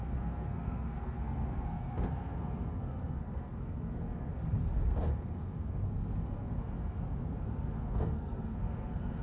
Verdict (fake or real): fake